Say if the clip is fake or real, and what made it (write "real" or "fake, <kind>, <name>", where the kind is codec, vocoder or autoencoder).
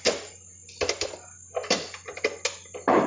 real